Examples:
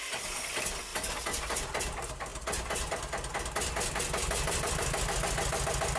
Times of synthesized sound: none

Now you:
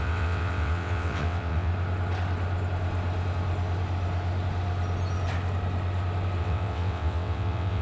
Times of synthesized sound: 0.0-1.7 (vocoder, WaveNeXt); 6.4-7.8

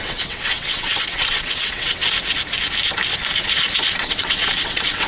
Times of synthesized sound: 0.0-2.0 (vocoder, WaveNeXt); 3.9-5.1

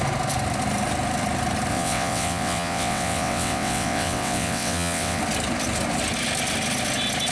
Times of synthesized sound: 1.7-5.2 (vocoder, WaveNeXt)

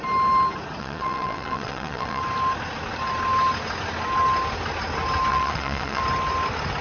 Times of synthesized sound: 0.8-2.2 (vocoder, WaveNeXt); 5.3-6.0

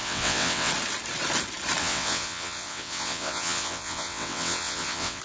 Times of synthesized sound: 0.0-0.7 (vocoder, WaveNeXt); 1.8-5.2